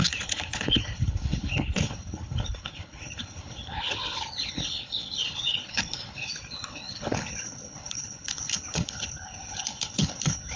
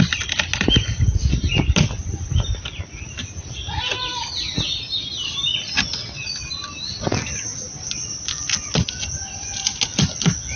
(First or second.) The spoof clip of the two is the first